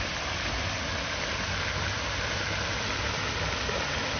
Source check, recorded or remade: remade